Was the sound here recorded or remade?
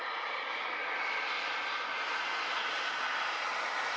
recorded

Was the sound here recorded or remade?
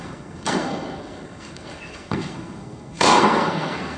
remade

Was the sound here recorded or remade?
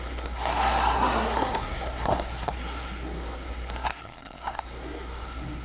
remade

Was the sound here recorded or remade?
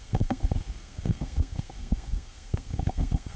remade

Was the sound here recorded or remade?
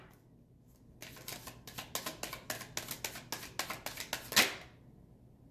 recorded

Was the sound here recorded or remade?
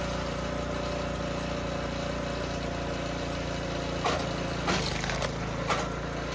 recorded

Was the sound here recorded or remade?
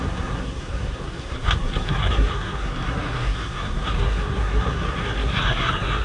remade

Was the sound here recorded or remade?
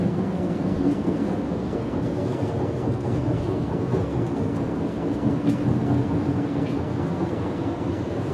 remade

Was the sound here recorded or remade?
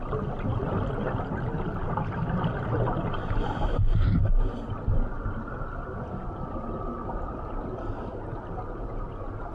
recorded